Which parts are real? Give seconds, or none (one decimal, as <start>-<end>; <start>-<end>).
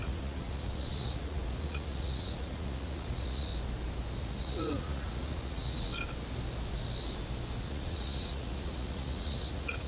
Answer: 3.5-4.2; 5.9-7.6